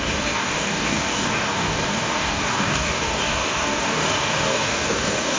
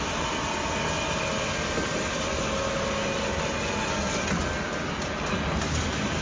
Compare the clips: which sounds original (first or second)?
second